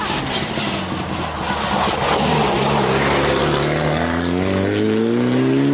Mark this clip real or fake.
real